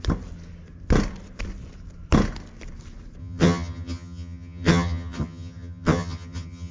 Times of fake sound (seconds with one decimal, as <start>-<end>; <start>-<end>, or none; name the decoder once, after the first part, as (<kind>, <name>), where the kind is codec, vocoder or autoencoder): 3.2-6.7 (vocoder, HiFi-GAN)